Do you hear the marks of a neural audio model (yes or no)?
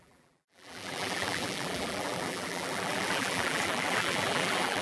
yes